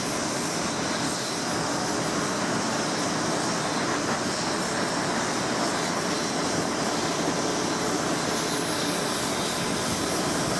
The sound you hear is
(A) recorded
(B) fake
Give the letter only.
A